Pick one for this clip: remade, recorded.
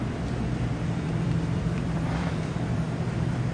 remade